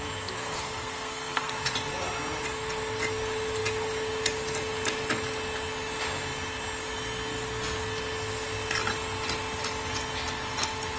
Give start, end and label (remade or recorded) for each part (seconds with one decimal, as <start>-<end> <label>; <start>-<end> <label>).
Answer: 0.0-0.4 recorded; 0.4-1.5 remade; 1.5-11.0 recorded